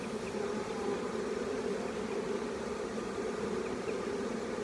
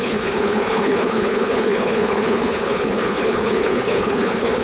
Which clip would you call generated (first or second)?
second